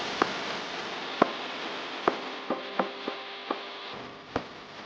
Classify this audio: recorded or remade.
recorded